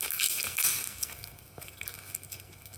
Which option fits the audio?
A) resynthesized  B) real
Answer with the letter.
A